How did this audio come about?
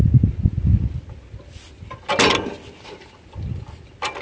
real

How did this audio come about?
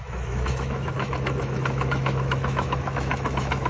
fake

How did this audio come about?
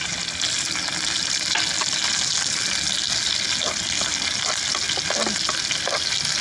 real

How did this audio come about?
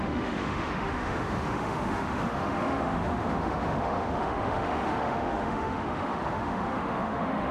fake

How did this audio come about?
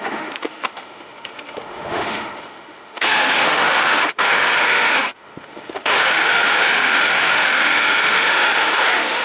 fake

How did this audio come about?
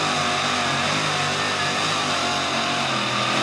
real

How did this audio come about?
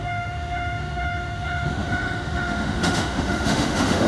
fake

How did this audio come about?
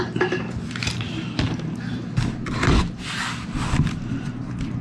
real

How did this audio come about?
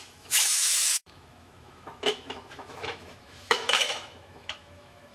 fake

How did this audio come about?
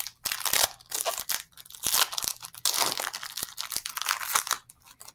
real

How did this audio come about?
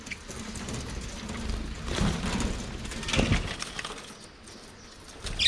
real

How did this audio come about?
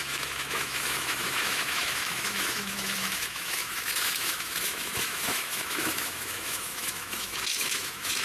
fake